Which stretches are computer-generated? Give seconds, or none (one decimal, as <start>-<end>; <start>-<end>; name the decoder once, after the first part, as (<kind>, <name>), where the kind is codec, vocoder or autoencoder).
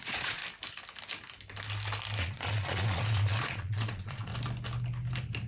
0.0-0.4 (vocoder, Vocos); 2.2-4.3